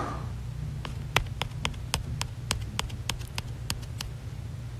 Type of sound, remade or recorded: recorded